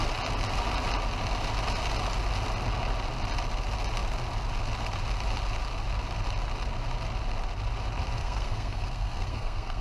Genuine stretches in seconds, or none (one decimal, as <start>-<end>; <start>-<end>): 0.0-8.2

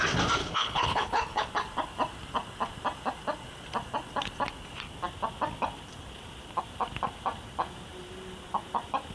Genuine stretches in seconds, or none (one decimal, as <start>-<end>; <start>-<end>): 0.0-0.4; 1.5-9.1

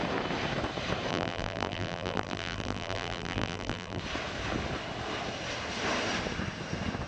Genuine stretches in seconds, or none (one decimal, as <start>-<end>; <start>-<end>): 0.0-1.1; 4.0-7.1

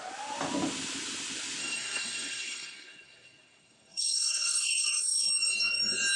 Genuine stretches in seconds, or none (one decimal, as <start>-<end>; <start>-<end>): 0.0-1.6; 5.3-6.2

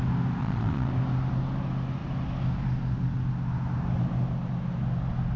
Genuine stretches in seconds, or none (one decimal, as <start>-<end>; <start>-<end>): 0.0-0.4; 0.9-5.4

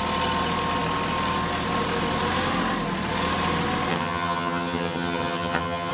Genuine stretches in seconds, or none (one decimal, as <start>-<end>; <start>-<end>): 0.0-3.9

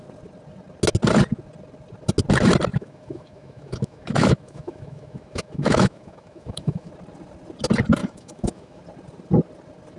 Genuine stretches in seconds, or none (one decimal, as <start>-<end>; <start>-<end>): 0.0-2.7; 6.9-8.0; 8.8-10.0